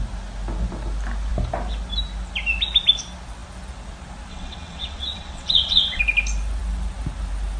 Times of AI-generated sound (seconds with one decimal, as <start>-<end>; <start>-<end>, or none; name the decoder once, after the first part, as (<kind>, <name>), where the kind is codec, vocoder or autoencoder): 4.3-6.0 (vocoder, WaveNeXt)